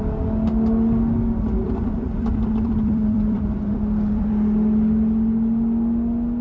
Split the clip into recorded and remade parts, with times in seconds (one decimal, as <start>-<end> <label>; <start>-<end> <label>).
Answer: 0.0-1.6 recorded; 1.6-4.3 remade; 4.3-6.4 recorded